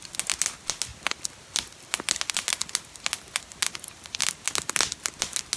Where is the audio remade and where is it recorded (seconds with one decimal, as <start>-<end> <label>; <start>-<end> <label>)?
0.0-5.6 recorded